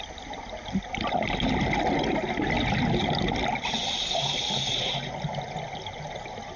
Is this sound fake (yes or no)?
no